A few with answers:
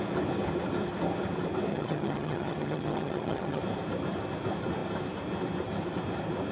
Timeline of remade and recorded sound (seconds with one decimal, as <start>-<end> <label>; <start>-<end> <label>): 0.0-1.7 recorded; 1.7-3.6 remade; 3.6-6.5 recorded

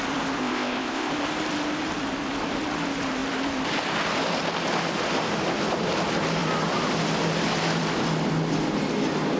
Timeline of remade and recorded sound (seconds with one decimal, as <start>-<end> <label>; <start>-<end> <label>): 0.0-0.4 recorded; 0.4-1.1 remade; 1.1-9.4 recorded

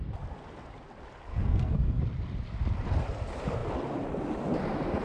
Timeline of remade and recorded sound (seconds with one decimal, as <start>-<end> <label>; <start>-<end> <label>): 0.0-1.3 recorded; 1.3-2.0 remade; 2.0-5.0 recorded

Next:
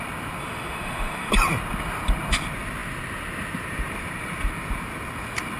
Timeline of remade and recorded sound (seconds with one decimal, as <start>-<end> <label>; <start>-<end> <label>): 0.0-0.4 recorded; 0.4-1.3 remade; 1.3-5.6 recorded

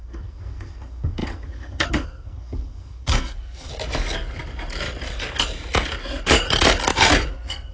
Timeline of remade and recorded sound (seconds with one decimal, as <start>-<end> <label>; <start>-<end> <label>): 0.0-3.7 remade; 3.7-7.3 recorded; 7.3-7.7 remade

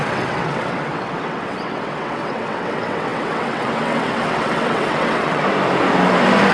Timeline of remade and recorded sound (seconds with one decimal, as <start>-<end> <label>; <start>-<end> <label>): 0.0-5.4 remade; 5.4-6.5 recorded

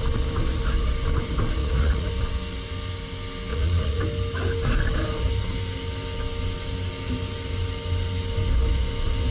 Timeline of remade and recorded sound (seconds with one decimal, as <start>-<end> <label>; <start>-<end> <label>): 0.0-1.6 recorded; 1.6-2.1 remade; 2.1-3.5 recorded; 3.5-4.0 remade; 4.0-9.3 recorded